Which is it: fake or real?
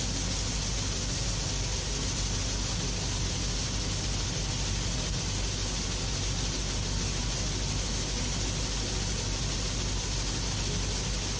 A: real